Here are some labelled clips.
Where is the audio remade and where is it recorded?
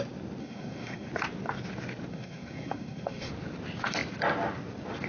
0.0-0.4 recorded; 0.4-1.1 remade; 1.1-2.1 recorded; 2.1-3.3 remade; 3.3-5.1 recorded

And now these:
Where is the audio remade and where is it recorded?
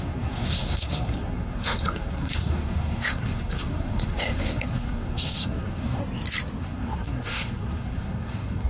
0.0-6.0 remade; 6.0-6.6 recorded; 6.6-8.7 remade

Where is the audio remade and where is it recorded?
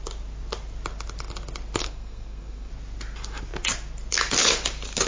0.0-1.8 recorded; 1.8-2.7 remade; 2.7-5.1 recorded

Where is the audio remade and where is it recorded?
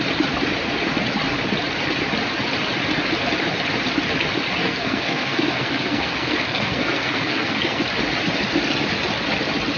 0.0-4.6 recorded; 4.6-7.8 remade; 7.8-9.8 recorded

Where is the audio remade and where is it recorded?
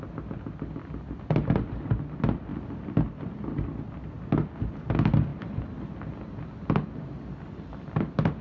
0.0-8.4 recorded